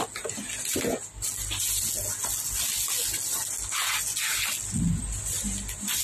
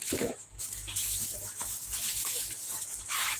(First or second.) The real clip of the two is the first